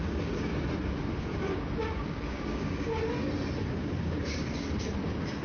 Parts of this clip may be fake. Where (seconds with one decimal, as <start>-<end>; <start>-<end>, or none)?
0.0-0.5; 1.2-2.9; 3.6-5.4